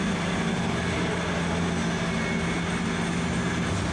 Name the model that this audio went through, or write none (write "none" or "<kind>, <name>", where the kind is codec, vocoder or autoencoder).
none